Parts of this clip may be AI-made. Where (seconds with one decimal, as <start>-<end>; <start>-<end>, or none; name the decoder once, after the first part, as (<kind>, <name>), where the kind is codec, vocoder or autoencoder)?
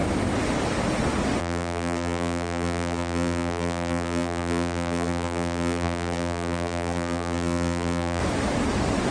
1.4-8.2 (vocoder, BigVGAN v2)